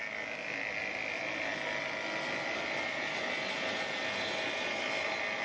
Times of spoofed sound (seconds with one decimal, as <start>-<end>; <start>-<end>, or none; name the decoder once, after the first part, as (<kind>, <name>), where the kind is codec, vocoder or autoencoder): none